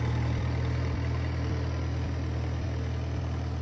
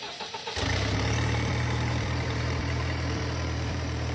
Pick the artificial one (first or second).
second